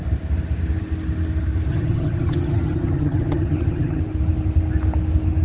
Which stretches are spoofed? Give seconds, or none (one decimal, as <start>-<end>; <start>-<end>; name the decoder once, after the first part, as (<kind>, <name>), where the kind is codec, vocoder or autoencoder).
1.7-4.0 (vocoder, HiFi-GAN)